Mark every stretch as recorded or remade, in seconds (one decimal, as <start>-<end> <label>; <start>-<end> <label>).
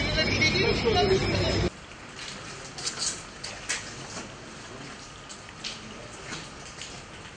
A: 0.0-7.4 recorded